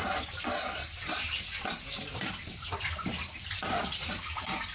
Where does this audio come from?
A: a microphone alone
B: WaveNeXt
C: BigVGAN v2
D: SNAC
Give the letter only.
C